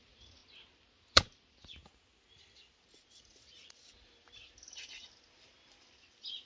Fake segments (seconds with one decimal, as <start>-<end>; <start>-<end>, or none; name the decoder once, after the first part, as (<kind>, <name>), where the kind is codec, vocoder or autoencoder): 0.0-0.4 (vocoder, Vocos); 3.2-3.8